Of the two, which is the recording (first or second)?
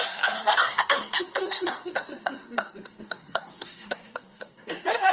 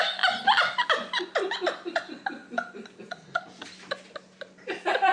second